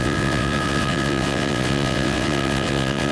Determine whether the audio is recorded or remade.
remade